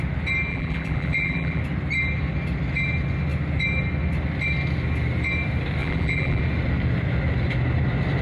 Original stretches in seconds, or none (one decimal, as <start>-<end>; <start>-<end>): 0.0-0.5; 1.6-5.8; 6.4-8.2